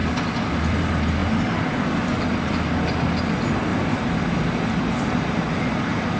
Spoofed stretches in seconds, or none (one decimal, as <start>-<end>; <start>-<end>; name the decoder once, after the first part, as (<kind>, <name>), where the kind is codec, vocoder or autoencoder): none